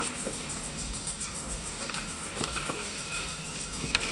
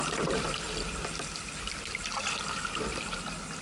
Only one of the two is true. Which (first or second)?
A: second